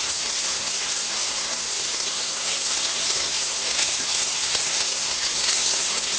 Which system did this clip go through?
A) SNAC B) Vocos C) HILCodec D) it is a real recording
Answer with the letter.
A